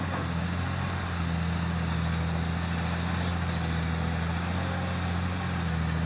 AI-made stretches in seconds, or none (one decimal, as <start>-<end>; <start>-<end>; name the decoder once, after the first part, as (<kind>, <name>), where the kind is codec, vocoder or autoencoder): none